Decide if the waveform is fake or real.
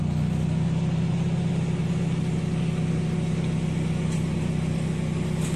real